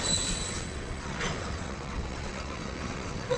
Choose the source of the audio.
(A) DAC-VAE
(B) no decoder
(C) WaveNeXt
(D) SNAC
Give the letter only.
C